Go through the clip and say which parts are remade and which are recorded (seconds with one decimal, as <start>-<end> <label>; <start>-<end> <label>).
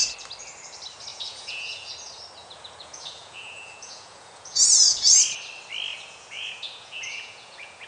0.0-1.1 recorded; 1.1-1.9 remade; 1.9-2.4 recorded; 2.4-5.2 remade; 5.2-5.9 recorded; 5.9-7.9 remade